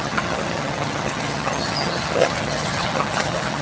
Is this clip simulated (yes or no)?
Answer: yes